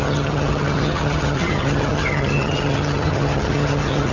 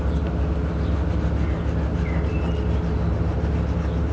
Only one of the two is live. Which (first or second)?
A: second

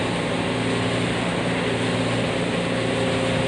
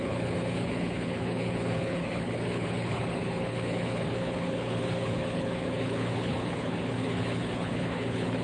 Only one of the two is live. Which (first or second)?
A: first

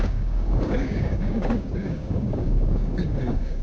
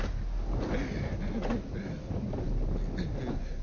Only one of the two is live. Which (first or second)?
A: second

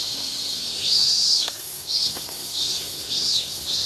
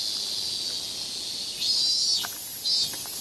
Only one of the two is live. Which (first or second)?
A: second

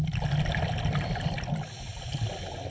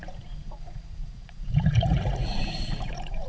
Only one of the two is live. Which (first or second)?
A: first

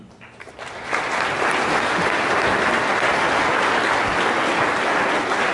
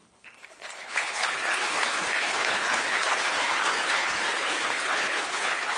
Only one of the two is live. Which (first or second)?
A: first